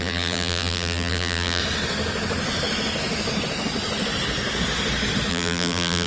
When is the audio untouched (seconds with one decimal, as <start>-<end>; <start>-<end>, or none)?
1.6-5.3